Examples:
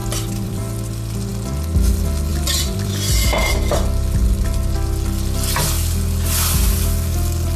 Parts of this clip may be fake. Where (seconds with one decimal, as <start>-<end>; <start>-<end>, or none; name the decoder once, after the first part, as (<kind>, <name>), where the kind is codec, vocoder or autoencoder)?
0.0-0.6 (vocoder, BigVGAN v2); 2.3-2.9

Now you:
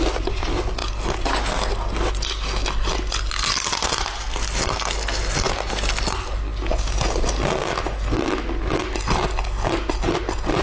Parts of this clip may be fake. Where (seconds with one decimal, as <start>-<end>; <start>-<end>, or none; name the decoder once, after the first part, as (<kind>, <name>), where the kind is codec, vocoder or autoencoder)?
none

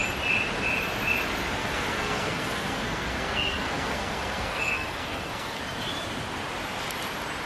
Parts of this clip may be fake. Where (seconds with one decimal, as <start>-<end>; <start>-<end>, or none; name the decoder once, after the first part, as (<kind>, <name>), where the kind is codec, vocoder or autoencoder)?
1.6-5.6 (codec, SNAC)